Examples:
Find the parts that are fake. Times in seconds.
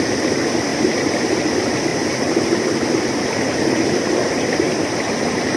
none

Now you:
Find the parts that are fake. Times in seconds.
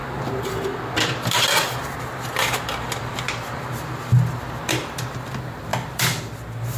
4.1-6.8 (vocoder, BigVGAN v2)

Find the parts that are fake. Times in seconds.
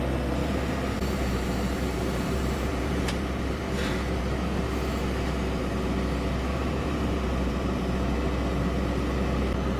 0.4-4.2 (vocoder, BigVGAN v2); 6.5-7.8